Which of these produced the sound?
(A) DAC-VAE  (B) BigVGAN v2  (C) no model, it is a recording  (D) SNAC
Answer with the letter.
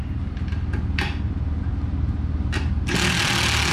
C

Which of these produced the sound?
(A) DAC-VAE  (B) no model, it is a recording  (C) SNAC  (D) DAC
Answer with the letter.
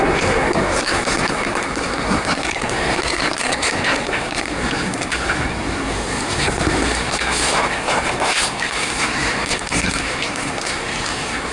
C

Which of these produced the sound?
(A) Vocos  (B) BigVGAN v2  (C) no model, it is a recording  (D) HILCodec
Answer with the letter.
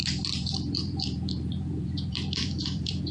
B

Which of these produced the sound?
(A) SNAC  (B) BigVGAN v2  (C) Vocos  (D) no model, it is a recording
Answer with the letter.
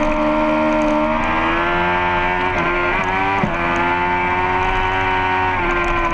D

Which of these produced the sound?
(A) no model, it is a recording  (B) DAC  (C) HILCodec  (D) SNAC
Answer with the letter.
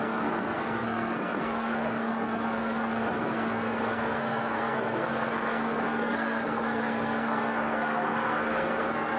D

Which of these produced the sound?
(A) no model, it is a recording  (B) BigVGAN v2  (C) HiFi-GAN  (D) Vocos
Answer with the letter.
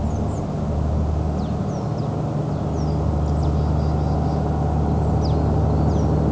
A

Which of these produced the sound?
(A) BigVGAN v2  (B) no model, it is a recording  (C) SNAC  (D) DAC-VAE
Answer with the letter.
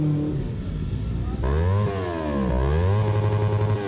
B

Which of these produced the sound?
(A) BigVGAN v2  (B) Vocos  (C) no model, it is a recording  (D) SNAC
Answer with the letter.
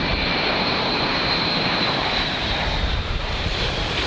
A